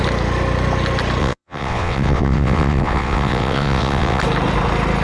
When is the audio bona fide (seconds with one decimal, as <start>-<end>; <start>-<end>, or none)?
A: 0.0-1.2; 4.2-5.0